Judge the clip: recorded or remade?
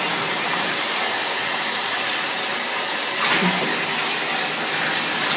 recorded